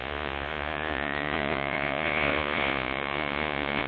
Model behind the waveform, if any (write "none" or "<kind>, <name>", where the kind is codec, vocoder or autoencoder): vocoder, Vocos